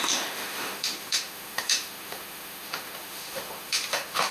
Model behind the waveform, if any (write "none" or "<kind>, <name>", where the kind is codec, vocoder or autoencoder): autoencoder, DAC-VAE